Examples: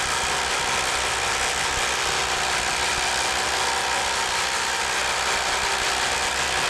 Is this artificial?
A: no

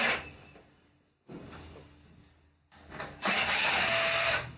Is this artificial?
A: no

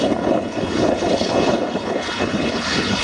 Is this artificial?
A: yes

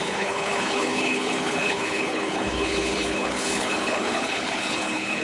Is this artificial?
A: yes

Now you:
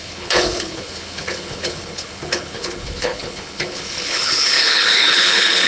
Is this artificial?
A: yes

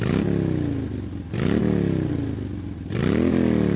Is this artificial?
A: no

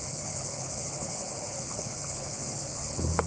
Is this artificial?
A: yes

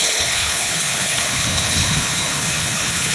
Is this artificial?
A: yes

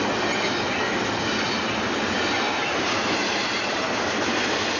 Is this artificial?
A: no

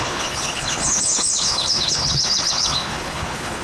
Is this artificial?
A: yes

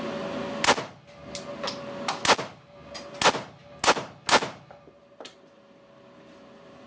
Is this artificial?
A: no